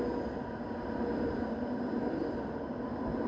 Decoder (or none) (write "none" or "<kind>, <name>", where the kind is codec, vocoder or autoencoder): none